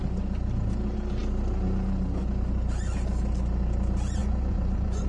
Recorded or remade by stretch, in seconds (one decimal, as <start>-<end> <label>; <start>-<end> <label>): 0.0-4.2 recorded; 4.2-5.1 remade